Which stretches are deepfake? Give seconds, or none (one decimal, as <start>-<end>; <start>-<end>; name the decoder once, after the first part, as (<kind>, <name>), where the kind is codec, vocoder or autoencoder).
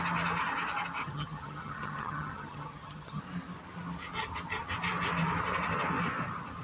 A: 1.0-3.2 (vocoder, HiFi-GAN)